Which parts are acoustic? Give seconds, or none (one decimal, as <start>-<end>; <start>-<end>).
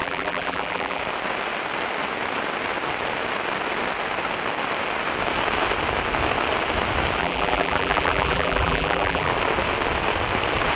1.0-7.2; 9.3-10.8